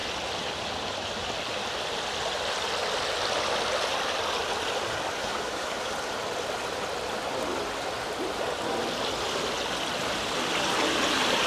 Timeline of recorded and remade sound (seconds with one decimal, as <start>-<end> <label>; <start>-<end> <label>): 0.0-5.2 recorded; 5.2-5.9 remade; 5.9-11.5 recorded